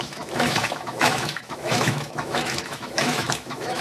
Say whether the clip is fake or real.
fake